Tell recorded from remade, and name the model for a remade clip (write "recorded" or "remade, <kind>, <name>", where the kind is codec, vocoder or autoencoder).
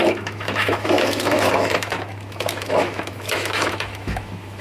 remade, autoencoder, DAC-VAE